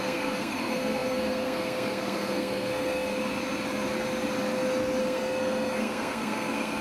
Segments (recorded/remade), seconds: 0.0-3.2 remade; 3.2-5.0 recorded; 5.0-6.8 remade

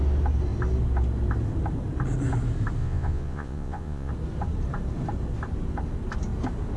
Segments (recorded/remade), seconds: 0.0-2.8 recorded; 2.8-4.1 remade; 4.1-6.8 recorded